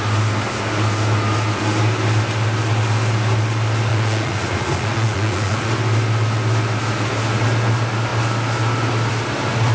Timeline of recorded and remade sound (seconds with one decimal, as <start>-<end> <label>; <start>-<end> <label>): 0.0-3.9 recorded; 3.9-5.7 remade; 5.7-9.7 recorded